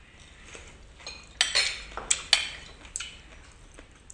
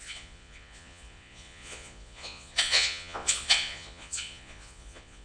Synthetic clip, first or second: second